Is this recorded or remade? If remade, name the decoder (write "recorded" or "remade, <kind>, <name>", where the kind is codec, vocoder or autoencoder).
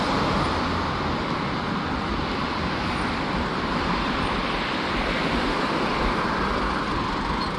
remade, vocoder, BigVGAN v2